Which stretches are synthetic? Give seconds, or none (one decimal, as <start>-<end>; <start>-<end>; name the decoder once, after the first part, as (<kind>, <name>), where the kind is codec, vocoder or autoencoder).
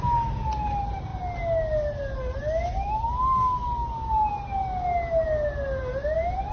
none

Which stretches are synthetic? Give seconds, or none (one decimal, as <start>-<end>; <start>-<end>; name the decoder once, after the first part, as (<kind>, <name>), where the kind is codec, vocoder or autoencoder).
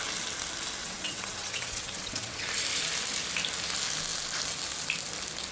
0.8-2.4 (vocoder, WaveNeXt)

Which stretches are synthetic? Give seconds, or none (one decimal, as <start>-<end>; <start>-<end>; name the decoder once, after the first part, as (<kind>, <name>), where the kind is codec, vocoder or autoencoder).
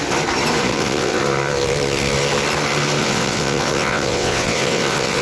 0.7-1.2 (vocoder, WaveNeXt); 3.0-5.2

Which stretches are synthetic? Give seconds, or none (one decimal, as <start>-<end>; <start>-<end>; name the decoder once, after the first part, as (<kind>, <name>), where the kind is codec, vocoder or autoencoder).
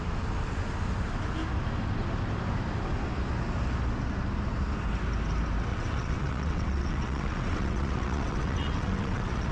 5.7-9.5 (vocoder, WaveNeXt)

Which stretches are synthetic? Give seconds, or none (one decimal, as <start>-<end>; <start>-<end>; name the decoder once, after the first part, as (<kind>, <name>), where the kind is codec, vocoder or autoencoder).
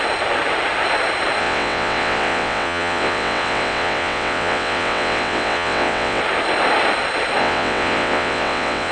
1.4-6.2 (vocoder, WaveNeXt); 7.4-8.9